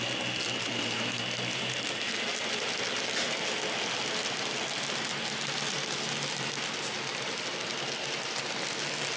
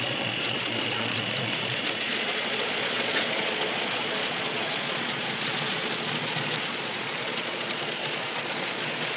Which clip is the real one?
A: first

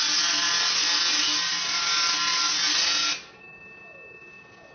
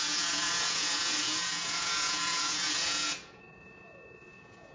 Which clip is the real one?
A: first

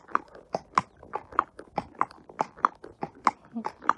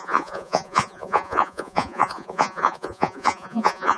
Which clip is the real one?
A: first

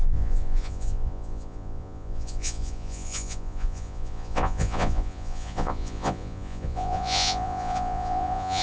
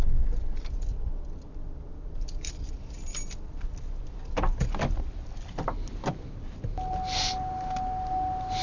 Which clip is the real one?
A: second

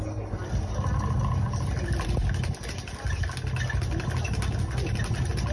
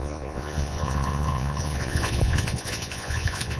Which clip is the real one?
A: first